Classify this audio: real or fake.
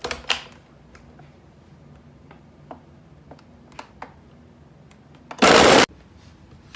real